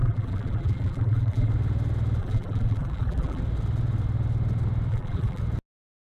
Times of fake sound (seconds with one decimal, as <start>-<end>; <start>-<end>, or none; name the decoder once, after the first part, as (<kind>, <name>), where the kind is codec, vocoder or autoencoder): 0.0-1.5 (vocoder, BigVGAN v2); 2.2-3.4; 4.9-5.4